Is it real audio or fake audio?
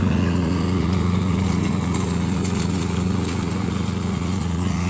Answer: fake